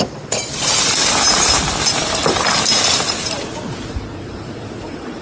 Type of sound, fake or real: real